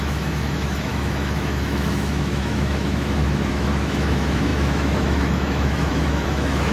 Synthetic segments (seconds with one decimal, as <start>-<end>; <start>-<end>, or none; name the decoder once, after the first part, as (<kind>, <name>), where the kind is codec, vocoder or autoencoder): 0.0-6.7 (autoencoder, DAC-VAE)